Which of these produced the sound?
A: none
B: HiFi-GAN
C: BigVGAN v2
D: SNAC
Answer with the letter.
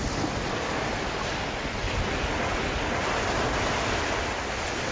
A